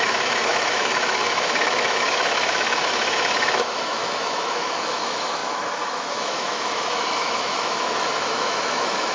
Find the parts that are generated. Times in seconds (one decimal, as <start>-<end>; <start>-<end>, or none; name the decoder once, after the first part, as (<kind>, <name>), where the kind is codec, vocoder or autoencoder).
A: 0.0-9.1 (autoencoder, DAC-VAE)